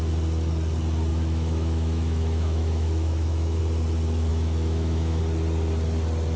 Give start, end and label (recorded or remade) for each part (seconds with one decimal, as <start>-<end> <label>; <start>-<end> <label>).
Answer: 0.0-1.1 recorded; 1.1-3.6 remade; 3.6-4.3 recorded; 4.3-5.2 remade; 5.2-6.4 recorded